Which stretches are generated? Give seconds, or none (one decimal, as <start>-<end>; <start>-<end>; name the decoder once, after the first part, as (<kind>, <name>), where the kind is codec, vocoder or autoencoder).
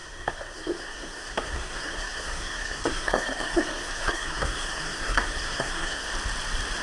0.0-6.1 (codec, SNAC)